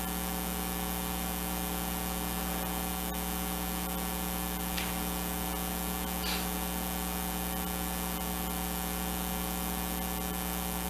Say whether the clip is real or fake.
real